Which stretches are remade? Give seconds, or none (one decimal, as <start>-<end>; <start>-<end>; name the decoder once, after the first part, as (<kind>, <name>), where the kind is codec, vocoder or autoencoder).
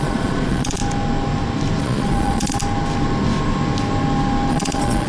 0.0-0.8 (vocoder, Vocos); 1.8-2.6; 4.5-5.1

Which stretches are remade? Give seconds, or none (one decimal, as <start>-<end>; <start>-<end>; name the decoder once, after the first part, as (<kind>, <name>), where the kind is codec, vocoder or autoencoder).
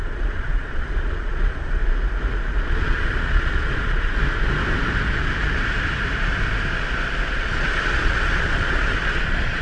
0.0-1.8 (vocoder, Vocos); 2.6-4.2; 7.3-9.6